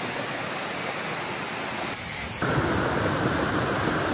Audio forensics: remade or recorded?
recorded